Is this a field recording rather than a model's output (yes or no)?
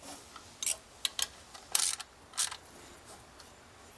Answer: yes